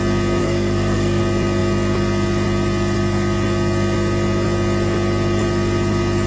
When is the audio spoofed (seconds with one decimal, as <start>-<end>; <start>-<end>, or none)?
0.4-1.2